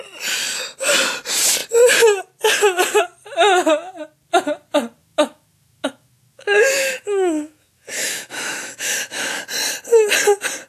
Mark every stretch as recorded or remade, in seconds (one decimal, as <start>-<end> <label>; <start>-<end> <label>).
0.0-5.0 recorded; 5.0-9.4 remade; 9.4-10.7 recorded